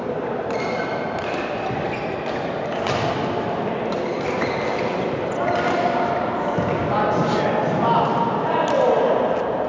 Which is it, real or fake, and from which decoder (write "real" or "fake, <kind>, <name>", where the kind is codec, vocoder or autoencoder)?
real